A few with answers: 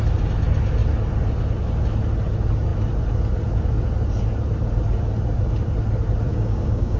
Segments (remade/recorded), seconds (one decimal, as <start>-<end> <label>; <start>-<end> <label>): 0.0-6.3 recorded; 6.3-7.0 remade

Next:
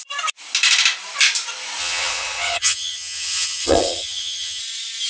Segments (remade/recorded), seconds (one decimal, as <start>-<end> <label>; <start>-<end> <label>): 0.0-1.8 recorded; 1.8-4.6 remade; 4.6-5.1 recorded

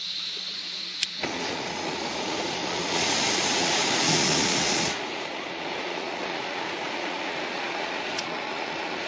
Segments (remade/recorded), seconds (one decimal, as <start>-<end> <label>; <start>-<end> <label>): 0.0-9.1 remade

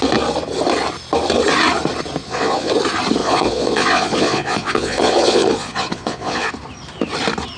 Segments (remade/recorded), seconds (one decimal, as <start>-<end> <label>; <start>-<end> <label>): 0.0-2.2 recorded; 2.2-2.7 remade; 2.7-3.2 recorded; 3.2-6.5 remade; 6.5-7.6 recorded

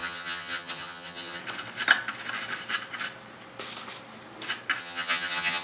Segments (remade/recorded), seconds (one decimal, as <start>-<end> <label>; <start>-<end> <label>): 0.0-1.4 remade; 1.4-4.8 recorded; 4.8-5.6 remade

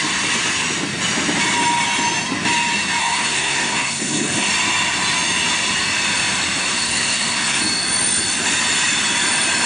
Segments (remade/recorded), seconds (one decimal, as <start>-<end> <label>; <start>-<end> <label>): 0.0-3.0 recorded; 3.0-4.5 remade; 4.5-6.7 recorded; 6.7-7.6 remade; 7.6-9.7 recorded